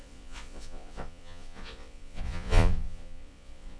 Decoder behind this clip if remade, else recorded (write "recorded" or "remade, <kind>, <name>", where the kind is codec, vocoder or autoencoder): remade, vocoder, Vocos